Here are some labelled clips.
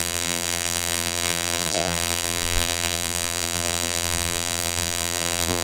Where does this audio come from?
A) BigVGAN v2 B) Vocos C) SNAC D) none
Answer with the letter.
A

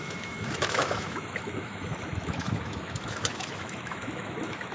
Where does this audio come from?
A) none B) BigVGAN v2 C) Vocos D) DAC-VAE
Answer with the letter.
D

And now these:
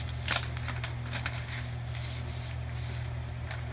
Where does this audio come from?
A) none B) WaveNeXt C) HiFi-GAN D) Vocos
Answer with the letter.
A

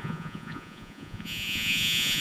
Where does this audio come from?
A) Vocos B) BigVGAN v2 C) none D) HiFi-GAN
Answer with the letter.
A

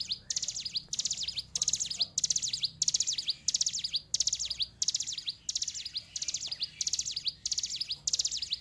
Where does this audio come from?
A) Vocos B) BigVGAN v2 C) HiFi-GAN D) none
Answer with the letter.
D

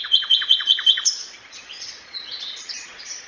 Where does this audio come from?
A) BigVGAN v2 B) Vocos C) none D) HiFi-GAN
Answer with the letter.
B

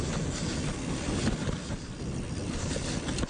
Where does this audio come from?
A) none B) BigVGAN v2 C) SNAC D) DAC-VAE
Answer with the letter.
A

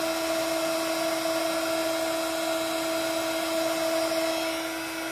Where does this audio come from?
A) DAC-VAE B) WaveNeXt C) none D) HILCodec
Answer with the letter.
C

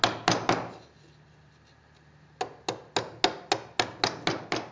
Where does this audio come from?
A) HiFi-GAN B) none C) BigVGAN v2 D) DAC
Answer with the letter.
B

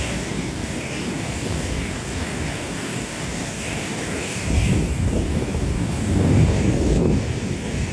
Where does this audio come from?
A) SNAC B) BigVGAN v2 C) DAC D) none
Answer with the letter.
C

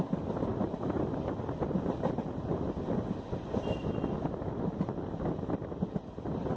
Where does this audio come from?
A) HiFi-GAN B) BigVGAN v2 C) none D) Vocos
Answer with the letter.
C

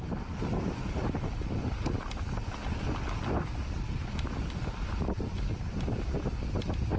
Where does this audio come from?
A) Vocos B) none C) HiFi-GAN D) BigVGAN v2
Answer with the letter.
B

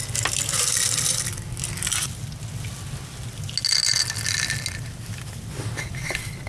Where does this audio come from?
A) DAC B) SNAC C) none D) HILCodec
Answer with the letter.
C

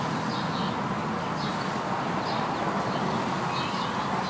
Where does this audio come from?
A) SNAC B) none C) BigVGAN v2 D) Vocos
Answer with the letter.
B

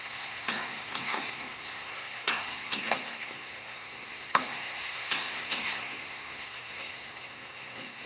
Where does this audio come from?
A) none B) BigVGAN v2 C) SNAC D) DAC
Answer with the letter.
C